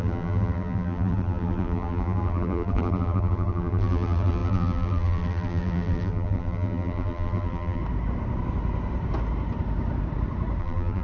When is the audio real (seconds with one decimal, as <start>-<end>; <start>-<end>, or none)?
7.8-10.6

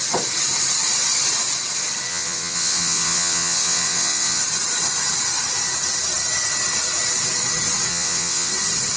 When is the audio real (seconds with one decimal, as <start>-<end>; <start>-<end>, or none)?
0.0-2.1; 4.4-7.9; 8.5-9.0

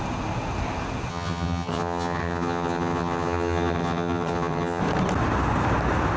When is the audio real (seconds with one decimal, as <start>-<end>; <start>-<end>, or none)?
0.0-1.1; 4.8-6.2

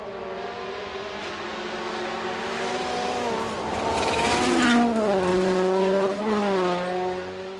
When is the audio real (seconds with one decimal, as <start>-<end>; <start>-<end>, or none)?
0.0-5.3; 6.2-7.6

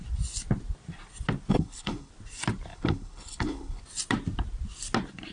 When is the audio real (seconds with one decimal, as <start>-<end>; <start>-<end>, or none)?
0.0-1.5; 2.1-2.7; 3.8-5.3

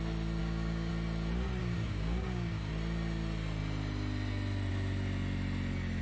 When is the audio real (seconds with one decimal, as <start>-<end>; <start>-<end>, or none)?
0.0-0.4; 0.9-1.6; 2.7-6.0